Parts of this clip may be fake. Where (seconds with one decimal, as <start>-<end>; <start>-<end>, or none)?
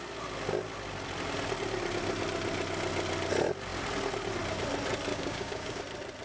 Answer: 5.1-5.8